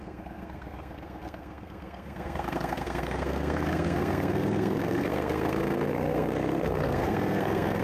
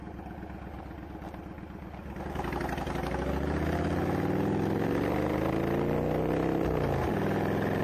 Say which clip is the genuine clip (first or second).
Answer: second